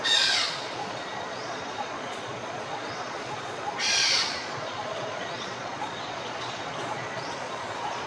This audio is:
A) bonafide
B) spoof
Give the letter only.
B